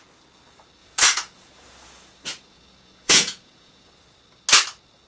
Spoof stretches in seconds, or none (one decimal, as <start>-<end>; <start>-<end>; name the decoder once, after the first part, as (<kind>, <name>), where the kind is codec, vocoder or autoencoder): 0.8-3.9 (vocoder, Vocos)